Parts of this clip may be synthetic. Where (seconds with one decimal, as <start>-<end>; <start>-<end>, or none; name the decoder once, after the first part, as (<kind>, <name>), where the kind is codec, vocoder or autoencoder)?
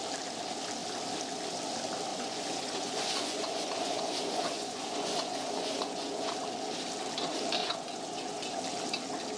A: 2.1-6.3 (vocoder, Vocos); 7.6-8.6